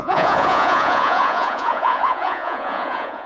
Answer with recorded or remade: remade